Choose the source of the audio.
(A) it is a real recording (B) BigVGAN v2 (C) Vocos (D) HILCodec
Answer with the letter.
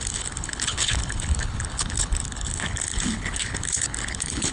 D